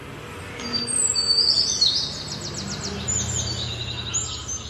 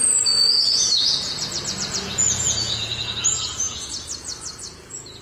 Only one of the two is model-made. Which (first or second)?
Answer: second